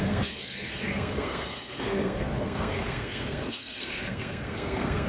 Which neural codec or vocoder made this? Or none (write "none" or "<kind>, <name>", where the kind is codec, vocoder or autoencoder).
codec, SNAC